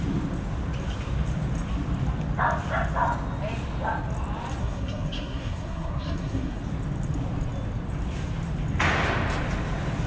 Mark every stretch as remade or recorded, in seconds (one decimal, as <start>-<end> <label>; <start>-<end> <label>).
0.0-4.6 recorded; 4.6-6.6 remade; 6.6-10.1 recorded